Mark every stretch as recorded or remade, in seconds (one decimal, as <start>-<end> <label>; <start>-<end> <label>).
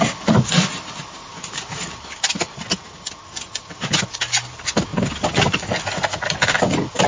0.0-1.2 recorded; 1.2-2.2 remade; 2.2-4.9 recorded; 4.9-5.6 remade; 5.6-7.1 recorded